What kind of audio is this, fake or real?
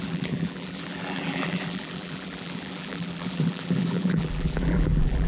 fake